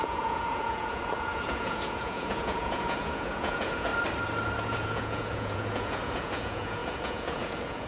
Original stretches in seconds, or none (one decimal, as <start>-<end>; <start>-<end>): 3.9-4.6